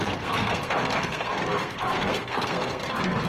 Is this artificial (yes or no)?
yes